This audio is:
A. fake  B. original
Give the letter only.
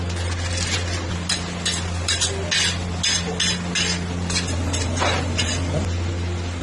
B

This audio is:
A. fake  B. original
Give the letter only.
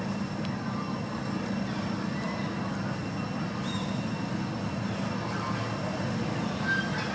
B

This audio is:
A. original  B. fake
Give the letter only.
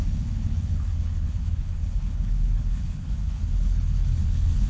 B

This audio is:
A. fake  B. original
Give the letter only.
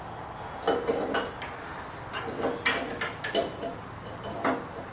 B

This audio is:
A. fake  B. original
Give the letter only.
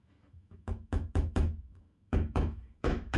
A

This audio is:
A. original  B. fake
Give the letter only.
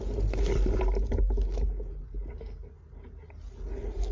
A